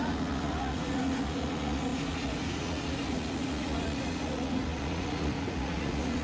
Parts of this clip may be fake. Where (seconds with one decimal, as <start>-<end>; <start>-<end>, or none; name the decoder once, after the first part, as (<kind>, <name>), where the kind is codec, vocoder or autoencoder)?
0.0-6.2 (vocoder, Vocos)